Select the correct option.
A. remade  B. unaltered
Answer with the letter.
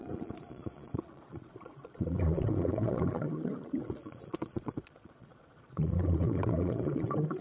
A